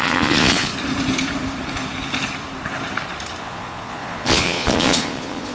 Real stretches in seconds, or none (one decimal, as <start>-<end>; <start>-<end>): 0.7-3.4

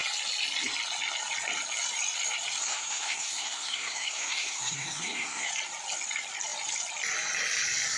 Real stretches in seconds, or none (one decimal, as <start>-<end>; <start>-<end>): 0.0-2.6; 5.5-8.0

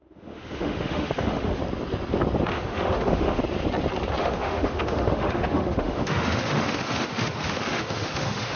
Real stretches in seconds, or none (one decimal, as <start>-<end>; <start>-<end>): 1.6-2.5; 3.4-4.2

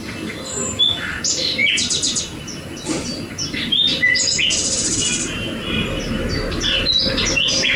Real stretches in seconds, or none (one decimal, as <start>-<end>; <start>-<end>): 0.0-3.9

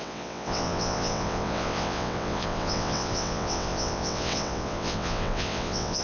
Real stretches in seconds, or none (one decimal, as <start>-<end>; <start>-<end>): none

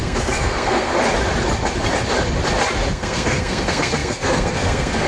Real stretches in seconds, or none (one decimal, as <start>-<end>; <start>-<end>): 0.9-2.9